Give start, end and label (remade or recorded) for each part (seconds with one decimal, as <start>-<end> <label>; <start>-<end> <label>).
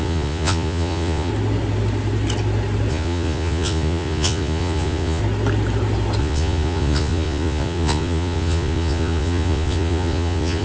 0.0-1.3 remade; 1.3-2.9 recorded; 2.9-5.2 remade; 5.2-6.2 recorded; 6.2-10.6 remade